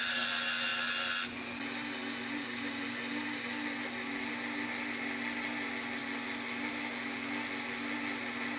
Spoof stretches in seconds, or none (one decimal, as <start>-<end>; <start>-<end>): none